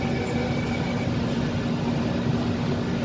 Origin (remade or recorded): recorded